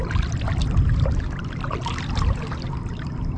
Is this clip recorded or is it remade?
recorded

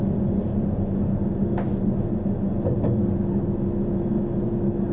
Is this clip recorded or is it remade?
recorded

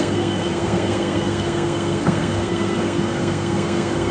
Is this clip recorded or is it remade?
remade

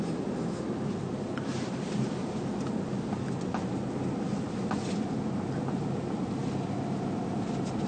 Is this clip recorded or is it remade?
recorded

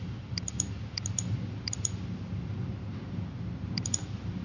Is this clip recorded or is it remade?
recorded